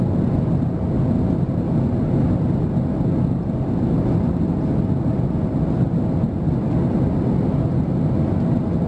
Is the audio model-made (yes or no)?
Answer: no